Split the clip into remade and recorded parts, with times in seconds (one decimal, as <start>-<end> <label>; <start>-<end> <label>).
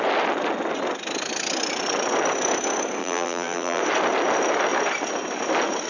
0.0-3.0 recorded; 3.0-3.8 remade; 3.8-5.9 recorded